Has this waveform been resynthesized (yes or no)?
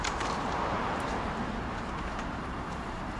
yes